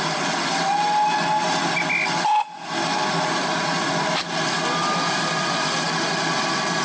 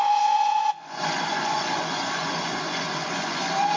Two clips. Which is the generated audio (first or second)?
second